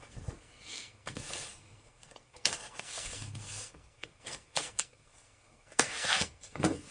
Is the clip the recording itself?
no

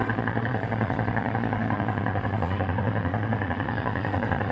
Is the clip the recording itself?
no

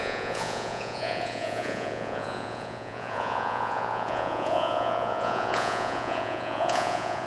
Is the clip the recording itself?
no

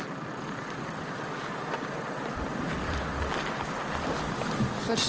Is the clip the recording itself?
yes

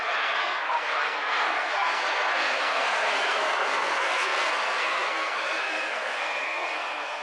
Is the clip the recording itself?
no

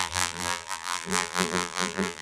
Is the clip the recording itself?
no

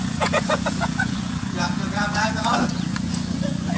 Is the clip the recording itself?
no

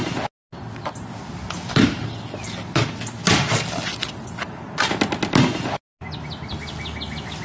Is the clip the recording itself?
yes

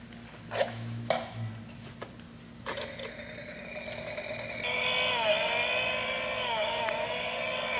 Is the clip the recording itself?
yes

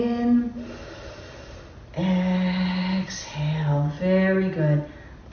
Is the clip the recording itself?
yes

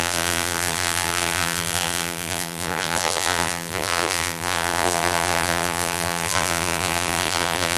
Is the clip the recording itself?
no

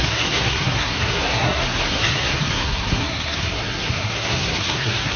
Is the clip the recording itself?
no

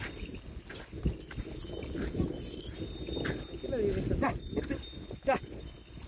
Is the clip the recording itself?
yes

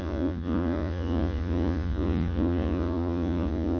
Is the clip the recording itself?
no